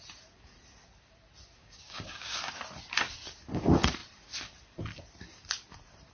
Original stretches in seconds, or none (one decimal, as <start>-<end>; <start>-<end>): 0.0-1.6; 2.5-6.1

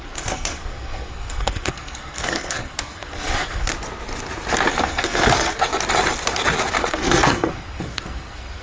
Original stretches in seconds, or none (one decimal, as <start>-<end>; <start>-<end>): 3.7-4.7; 5.7-6.9

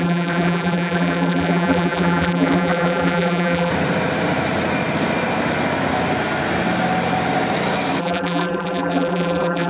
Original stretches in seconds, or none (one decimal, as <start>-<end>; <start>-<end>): 3.7-8.0

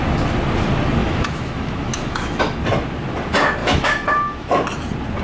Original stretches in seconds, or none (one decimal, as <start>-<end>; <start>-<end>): 0.0-1.0; 2.6-3.6; 4.5-5.2

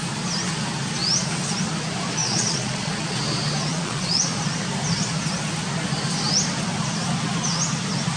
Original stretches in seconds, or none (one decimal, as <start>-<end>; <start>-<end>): 0.0-2.2; 3.2-3.7; 4.4-8.2